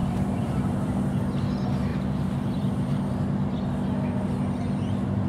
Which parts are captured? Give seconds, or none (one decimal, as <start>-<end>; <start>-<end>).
1.0-1.9; 3.0-5.3